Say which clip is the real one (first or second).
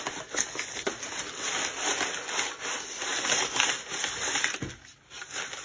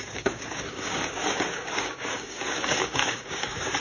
first